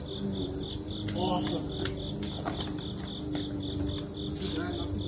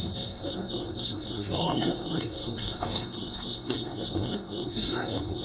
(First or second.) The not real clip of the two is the second